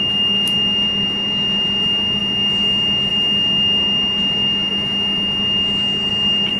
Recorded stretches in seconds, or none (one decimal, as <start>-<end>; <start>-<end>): 0.0-6.6